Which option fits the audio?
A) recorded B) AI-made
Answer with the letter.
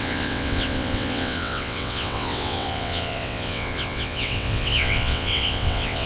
B